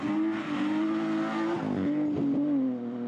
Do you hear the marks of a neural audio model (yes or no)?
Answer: no